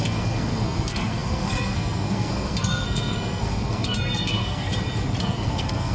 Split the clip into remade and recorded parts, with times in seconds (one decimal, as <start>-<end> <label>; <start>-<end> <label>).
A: 0.0-4.7 remade; 4.7-5.2 recorded; 5.2-5.9 remade